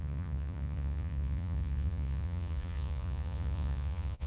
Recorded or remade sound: remade